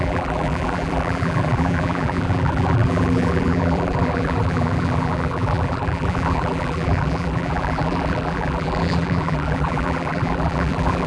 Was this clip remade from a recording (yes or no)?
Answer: yes